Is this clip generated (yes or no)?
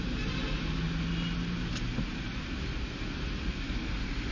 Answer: no